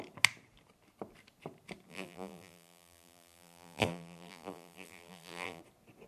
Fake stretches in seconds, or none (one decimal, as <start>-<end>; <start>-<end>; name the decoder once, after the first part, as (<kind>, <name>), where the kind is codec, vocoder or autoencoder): 1.9-5.6 (vocoder, BigVGAN v2)